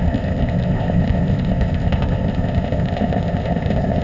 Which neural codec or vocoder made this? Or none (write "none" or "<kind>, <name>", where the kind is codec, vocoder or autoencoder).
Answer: codec, ZipCodec